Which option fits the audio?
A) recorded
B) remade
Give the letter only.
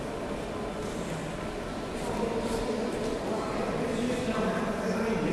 A